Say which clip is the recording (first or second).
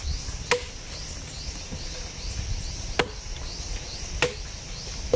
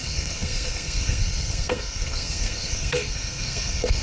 first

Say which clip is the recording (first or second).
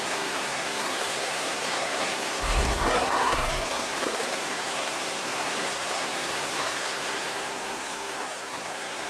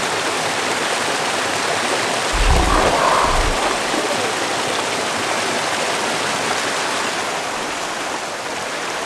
second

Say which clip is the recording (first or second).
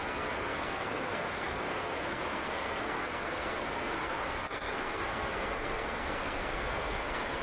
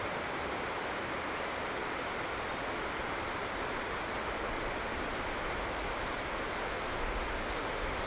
second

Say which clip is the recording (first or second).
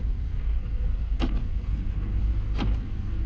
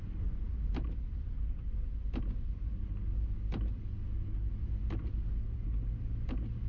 second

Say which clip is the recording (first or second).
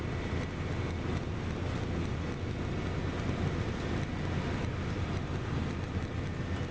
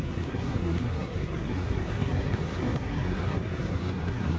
first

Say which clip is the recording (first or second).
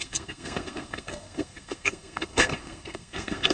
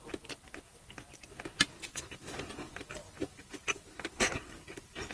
second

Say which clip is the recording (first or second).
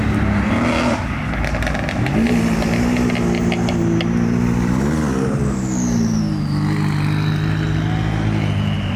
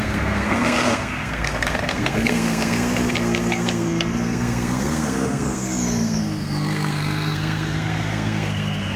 first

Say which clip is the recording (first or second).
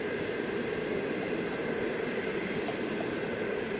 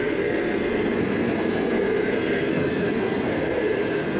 first